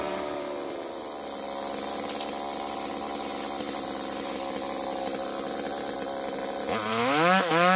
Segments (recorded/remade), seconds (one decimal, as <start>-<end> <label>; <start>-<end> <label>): 0.0-6.9 recorded; 6.9-7.8 remade